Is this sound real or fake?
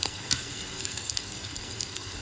fake